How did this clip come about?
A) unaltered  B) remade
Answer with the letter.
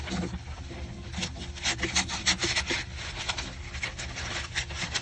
A